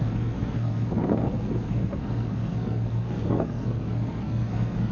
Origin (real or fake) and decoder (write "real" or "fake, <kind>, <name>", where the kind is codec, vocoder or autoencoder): fake, codec, SNAC